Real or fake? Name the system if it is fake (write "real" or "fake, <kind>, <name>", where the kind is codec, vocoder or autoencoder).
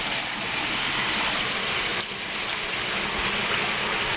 real